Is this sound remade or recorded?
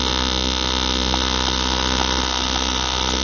recorded